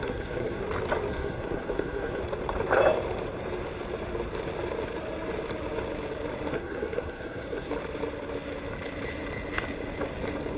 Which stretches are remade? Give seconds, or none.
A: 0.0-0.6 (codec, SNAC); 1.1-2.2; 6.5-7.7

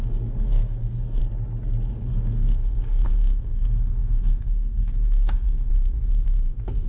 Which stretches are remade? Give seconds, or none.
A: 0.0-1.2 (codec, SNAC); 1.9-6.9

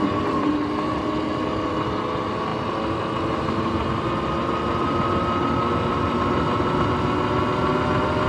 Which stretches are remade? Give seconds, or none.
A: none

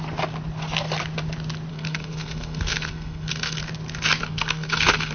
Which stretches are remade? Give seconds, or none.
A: 1.7-3.6 (codec, SNAC); 4.2-5.1

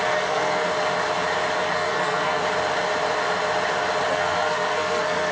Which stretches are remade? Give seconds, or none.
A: 0.0-0.7 (codec, SNAC); 1.6-2.4; 4.1-5.3

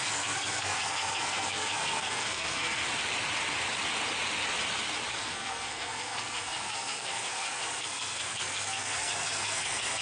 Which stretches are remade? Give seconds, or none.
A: 0.0-2.8 (codec, SNAC); 5.1-10.0